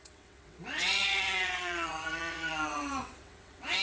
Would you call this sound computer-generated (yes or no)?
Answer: yes